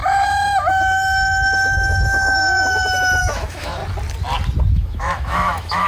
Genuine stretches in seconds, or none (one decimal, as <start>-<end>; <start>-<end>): 3.8-4.7